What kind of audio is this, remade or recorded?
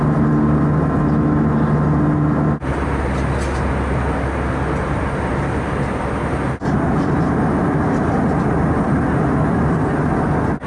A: recorded